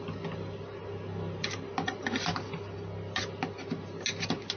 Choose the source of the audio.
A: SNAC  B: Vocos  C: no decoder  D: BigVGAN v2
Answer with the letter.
C